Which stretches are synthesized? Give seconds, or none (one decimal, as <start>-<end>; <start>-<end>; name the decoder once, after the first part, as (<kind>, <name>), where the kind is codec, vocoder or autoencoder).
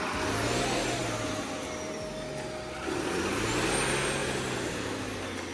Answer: none